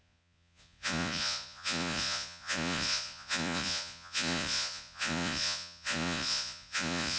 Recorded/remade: remade